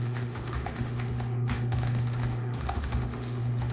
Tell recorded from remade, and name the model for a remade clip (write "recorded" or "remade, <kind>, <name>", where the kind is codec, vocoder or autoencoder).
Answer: remade, autoencoder, DAC-VAE